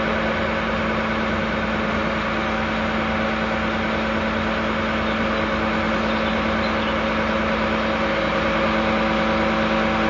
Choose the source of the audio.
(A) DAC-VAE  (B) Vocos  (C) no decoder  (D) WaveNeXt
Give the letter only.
C